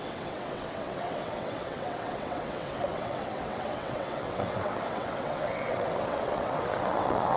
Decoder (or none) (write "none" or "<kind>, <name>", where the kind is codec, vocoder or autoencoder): vocoder, WaveNeXt